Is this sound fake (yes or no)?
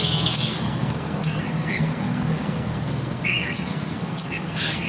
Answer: yes